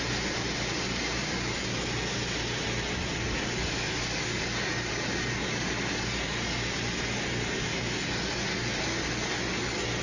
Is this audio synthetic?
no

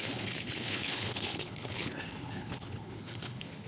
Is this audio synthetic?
yes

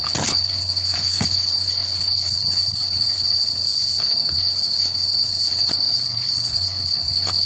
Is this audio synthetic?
yes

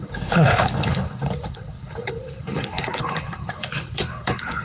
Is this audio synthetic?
yes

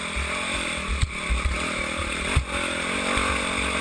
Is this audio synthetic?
no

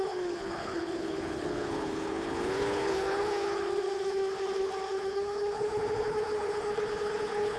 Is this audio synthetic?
yes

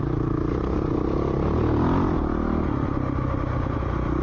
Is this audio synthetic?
no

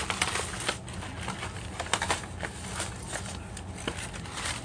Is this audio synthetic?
no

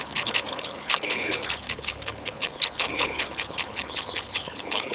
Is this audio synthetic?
yes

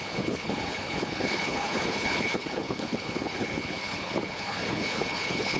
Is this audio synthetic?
yes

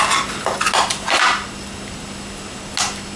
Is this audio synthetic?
no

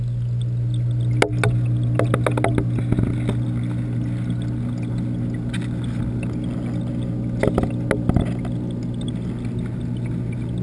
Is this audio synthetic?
no